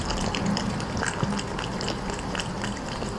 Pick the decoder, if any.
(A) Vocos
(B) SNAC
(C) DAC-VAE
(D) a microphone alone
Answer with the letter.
D